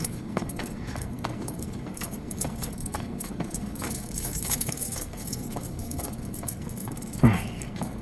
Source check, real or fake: fake